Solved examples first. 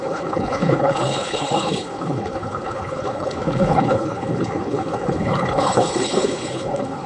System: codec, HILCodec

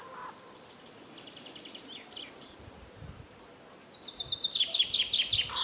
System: none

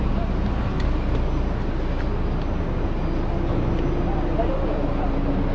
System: none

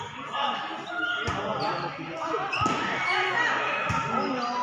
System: none